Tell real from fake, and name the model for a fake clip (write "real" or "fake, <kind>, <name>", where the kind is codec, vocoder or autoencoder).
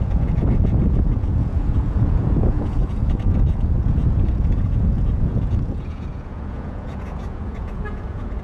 fake, vocoder, Vocos